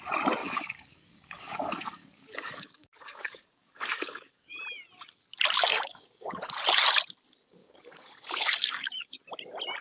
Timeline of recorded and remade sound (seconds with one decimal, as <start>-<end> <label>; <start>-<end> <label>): 0.0-0.4 recorded; 0.4-4.6 remade; 4.6-5.7 recorded; 5.7-6.6 remade; 6.6-7.6 recorded; 7.6-9.2 remade; 9.2-9.8 recorded